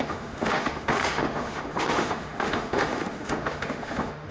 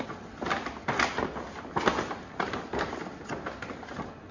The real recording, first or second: second